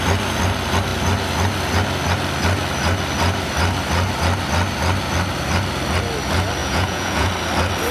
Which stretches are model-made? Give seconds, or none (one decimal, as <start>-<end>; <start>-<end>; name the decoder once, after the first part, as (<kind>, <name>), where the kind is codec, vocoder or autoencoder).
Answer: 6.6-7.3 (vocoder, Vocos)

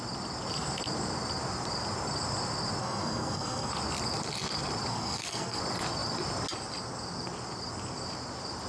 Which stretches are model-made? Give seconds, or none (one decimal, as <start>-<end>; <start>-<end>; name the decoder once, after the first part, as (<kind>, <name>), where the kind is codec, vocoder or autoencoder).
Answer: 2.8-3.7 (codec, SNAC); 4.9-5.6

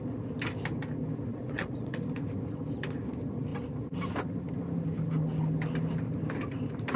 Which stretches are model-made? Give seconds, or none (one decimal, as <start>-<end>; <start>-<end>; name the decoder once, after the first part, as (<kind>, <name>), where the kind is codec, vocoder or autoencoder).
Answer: 1.3-2.0 (vocoder, Vocos)